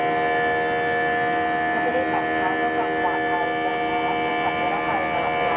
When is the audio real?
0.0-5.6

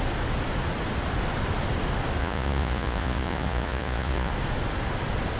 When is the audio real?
0.0-2.2; 4.3-5.4

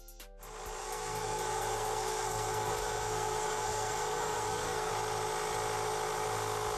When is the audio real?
0.0-0.8; 4.9-6.8